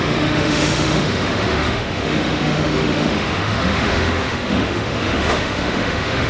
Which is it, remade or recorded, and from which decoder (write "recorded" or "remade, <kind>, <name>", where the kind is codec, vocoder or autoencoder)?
remade, autoencoder, DAC-VAE